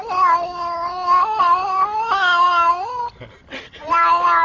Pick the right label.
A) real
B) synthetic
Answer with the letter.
A